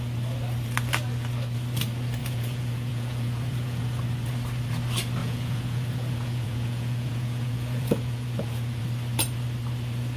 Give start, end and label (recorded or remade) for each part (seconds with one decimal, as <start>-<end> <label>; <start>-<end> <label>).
0.0-2.2 recorded; 2.2-4.0 remade; 4.0-5.2 recorded; 5.2-8.8 remade; 8.8-10.2 recorded